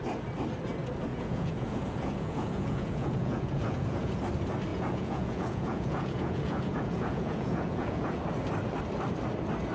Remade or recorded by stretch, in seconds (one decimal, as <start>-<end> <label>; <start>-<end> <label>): 0.0-1.1 recorded; 1.1-4.2 remade; 4.2-4.7 recorded; 4.7-8.2 remade; 8.2-9.7 recorded